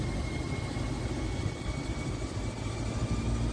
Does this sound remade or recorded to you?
recorded